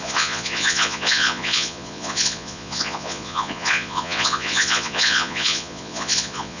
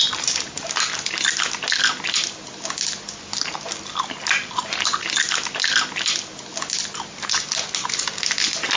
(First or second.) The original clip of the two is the second